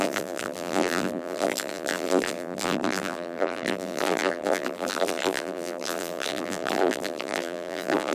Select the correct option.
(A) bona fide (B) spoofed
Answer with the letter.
B